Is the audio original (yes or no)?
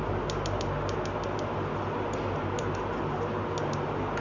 yes